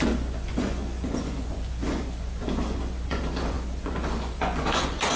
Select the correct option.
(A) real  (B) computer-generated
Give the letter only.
B